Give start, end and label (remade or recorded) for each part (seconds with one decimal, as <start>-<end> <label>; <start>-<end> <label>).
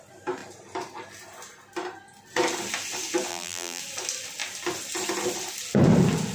0.0-3.3 recorded; 3.3-3.8 remade; 3.8-6.3 recorded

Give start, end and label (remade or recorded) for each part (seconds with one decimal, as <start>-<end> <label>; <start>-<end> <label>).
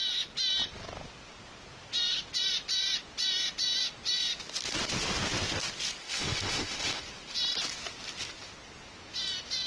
0.0-6.0 recorded; 6.0-7.0 remade; 7.0-9.7 recorded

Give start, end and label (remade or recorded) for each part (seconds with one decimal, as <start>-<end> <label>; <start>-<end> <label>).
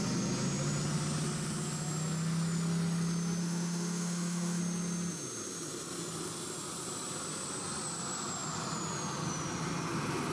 0.0-3.4 recorded; 3.4-4.6 remade; 4.6-10.3 recorded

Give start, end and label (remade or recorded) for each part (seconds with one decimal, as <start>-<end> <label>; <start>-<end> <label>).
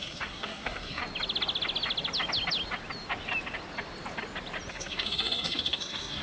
0.0-1.0 remade; 1.0-4.7 recorded; 4.7-6.2 remade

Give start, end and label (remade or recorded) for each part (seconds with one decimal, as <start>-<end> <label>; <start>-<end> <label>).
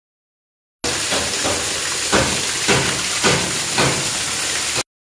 0.0-5.0 recorded